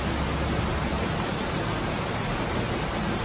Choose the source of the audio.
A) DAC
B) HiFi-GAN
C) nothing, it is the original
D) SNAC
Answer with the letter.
C